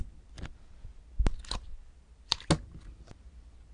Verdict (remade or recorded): recorded